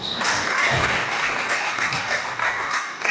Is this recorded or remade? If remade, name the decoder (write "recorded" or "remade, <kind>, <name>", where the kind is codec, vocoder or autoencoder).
remade, codec, DAC